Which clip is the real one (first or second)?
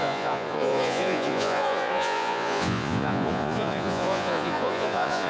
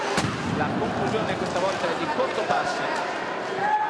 second